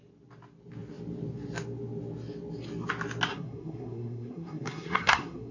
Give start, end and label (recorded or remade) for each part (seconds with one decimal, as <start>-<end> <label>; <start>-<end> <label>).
0.0-3.3 recorded; 3.3-5.5 remade